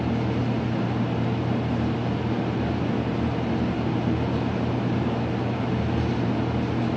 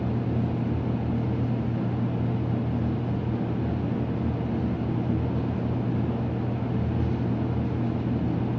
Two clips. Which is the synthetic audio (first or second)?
first